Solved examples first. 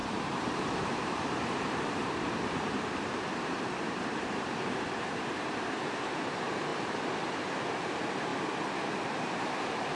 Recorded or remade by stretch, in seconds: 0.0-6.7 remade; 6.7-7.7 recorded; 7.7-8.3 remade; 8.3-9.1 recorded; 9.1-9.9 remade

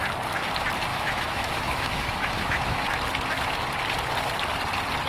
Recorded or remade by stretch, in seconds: 0.0-0.9 recorded; 0.9-3.0 remade; 3.0-5.1 recorded

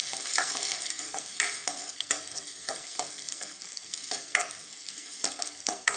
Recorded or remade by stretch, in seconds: 0.0-6.0 remade

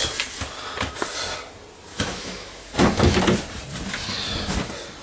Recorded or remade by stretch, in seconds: 0.0-1.9 recorded; 1.9-3.2 remade; 3.2-5.0 recorded

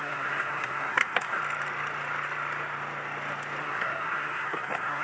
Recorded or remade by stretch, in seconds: 0.0-1.4 remade; 1.4-3.6 recorded; 3.6-5.0 remade

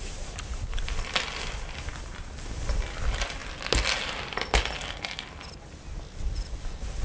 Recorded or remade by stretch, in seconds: 0.0-7.0 recorded

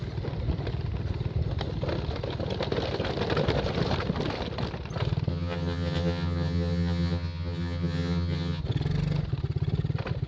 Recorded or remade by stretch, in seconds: 0.0-5.3 recorded; 5.3-8.6 remade; 8.6-10.3 recorded

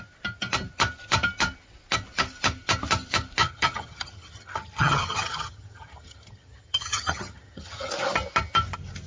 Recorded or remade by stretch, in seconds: 0.0-3.4 recorded; 3.4-7.9 remade; 7.9-9.1 recorded